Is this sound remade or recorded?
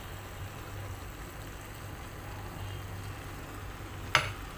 recorded